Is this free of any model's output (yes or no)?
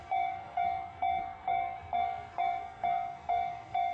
no